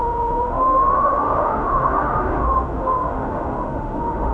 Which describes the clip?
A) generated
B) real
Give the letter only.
A